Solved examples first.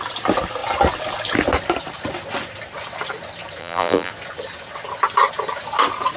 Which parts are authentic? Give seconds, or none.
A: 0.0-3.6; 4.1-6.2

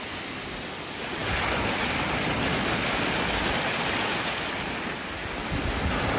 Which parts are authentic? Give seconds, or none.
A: 0.0-6.2

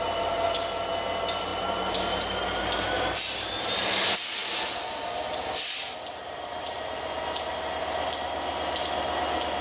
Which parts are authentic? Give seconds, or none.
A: 0.0-9.6

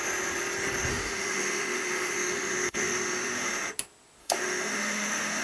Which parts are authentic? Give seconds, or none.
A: 0.0-0.9; 3.5-4.2

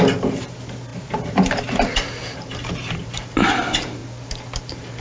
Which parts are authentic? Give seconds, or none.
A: 4.0-4.6

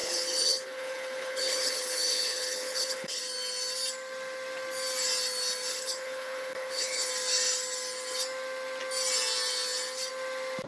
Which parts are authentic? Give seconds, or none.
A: 3.2-5.7; 7.1-10.7

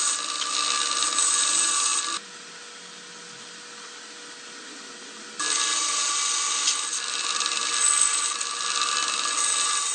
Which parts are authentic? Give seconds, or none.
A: 0.0-9.9

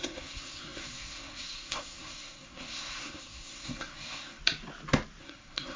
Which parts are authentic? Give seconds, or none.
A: 4.4-5.2